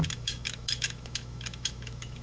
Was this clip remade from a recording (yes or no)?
yes